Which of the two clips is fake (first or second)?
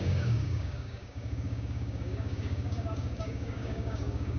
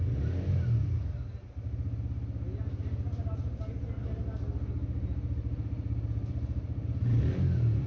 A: first